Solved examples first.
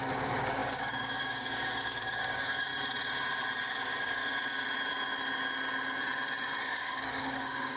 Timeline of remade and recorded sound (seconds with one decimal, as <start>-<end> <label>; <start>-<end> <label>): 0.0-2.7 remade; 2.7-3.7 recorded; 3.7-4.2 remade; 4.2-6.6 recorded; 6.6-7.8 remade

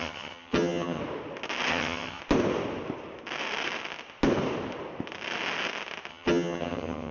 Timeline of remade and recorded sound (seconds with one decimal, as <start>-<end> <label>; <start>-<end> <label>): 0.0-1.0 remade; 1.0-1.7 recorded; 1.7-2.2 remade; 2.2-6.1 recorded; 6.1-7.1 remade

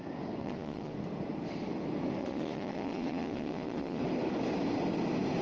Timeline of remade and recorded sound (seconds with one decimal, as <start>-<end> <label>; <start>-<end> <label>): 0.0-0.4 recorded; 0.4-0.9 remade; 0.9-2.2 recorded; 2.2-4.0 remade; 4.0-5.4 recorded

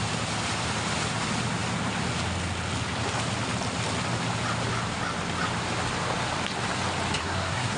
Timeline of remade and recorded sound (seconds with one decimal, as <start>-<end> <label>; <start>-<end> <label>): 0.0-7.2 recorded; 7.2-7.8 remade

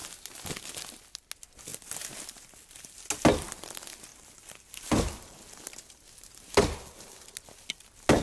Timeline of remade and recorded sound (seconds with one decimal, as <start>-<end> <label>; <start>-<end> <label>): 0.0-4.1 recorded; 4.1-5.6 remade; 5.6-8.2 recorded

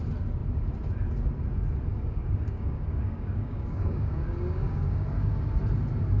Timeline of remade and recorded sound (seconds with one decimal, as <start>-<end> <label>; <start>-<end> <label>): 0.0-1.9 recorded; 1.9-5.6 remade; 5.6-6.2 recorded

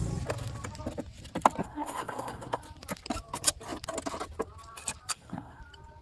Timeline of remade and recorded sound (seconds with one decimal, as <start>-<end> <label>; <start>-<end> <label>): 0.0-1.6 recorded; 1.6-2.6 remade; 2.6-5.1 recorded; 5.1-5.6 remade; 5.6-6.0 recorded

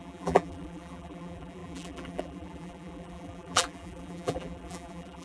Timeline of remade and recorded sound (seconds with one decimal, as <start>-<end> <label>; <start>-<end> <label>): 0.0-5.2 remade